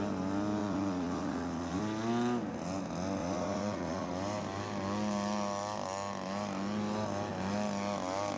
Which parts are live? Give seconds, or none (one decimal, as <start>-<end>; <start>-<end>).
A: 0.0-0.6; 1.8-3.2; 4.1-8.4